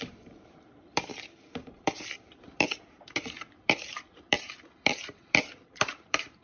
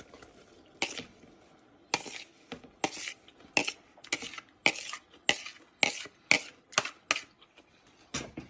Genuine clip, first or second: second